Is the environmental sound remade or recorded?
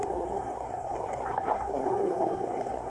remade